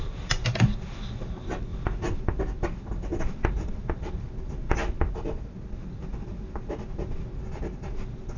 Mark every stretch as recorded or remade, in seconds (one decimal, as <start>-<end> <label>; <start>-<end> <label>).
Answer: 0.0-8.4 recorded